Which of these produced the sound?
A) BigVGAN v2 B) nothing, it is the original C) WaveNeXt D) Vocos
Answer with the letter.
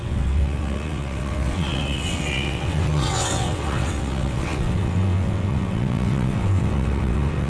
C